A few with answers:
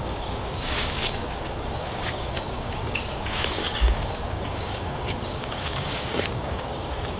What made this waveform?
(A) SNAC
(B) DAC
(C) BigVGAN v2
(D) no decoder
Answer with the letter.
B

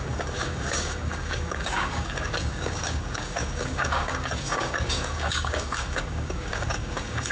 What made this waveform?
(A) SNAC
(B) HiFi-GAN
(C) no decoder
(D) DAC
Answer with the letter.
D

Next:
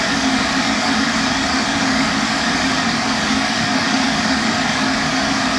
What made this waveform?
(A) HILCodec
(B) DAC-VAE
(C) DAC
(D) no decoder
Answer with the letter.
C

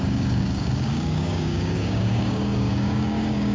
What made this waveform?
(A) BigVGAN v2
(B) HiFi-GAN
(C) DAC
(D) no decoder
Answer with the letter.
C